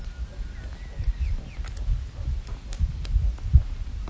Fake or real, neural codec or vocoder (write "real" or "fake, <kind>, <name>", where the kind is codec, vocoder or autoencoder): real